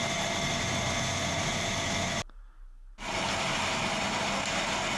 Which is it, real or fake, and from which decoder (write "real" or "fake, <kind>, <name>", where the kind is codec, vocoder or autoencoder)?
real